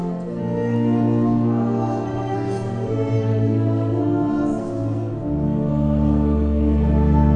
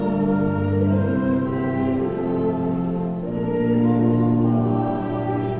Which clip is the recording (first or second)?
second